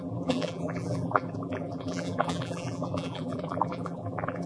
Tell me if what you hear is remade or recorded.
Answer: remade